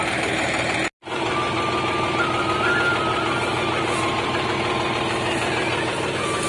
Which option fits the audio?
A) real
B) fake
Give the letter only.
A